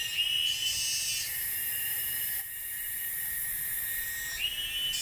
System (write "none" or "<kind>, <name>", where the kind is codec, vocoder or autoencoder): none